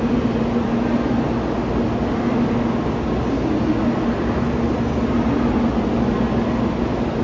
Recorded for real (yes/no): yes